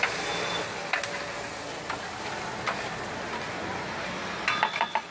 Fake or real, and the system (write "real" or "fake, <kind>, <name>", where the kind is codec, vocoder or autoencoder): real